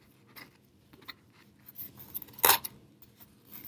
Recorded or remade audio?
recorded